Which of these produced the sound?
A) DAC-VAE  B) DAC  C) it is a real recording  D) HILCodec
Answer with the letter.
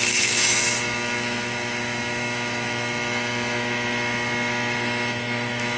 A